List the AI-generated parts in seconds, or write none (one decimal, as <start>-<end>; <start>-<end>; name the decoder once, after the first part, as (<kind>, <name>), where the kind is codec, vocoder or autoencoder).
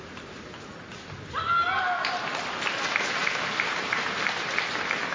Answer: 3.2-4.5 (vocoder, BigVGAN v2)